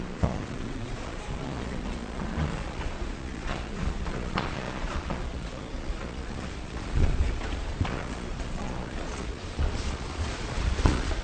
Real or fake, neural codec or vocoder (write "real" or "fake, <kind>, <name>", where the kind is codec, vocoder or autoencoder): fake, vocoder, Vocos